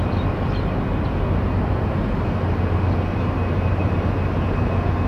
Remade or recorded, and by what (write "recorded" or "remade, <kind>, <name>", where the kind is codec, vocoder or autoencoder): recorded